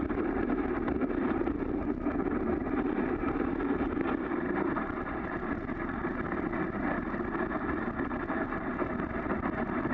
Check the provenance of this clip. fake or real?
fake